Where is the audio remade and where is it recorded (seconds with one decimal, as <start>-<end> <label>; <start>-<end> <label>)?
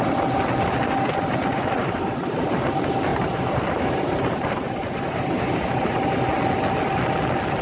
0.0-1.8 recorded; 1.8-2.7 remade; 2.7-3.1 recorded; 3.1-6.0 remade; 6.0-7.6 recorded